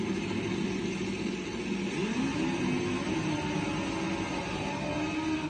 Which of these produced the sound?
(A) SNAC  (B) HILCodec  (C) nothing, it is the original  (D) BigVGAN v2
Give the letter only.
C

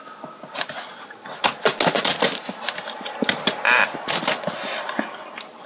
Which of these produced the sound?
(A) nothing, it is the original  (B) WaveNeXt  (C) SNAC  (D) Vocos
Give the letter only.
A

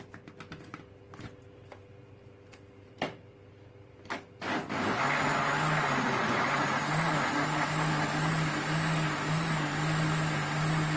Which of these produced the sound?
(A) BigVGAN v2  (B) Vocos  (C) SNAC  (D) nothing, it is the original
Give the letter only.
D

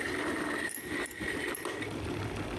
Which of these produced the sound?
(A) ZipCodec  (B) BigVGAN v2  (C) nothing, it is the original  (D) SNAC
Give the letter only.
C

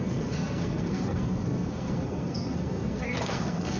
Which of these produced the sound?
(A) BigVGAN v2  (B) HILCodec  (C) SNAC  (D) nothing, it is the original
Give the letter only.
C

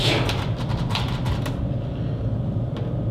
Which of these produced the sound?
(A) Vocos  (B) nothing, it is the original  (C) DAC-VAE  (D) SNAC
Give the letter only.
B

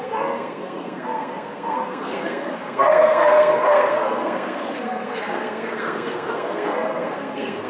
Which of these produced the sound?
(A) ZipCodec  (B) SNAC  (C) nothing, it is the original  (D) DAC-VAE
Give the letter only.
B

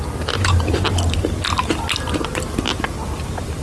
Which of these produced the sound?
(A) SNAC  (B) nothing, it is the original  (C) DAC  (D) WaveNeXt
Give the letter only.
B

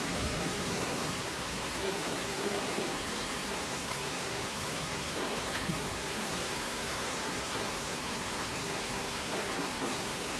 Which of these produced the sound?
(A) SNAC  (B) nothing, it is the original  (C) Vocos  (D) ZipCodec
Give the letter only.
A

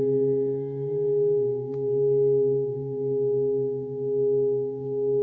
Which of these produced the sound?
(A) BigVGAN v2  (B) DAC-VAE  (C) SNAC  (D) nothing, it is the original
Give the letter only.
D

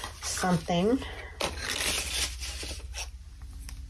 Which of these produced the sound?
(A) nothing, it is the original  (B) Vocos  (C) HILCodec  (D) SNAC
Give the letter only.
A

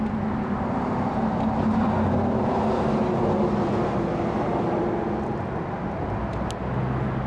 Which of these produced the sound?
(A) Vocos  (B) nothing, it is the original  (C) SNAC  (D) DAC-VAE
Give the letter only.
B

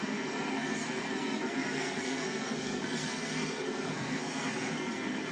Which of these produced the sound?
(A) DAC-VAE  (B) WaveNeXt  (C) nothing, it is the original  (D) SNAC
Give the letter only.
D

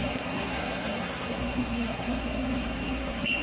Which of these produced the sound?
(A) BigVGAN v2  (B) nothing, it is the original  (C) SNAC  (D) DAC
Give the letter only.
C